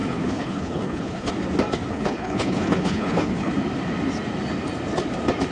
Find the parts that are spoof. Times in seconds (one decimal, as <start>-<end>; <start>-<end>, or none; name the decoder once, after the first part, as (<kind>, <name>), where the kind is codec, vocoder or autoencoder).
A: 0.0-1.3 (codec, HILCodec); 1.9-3.5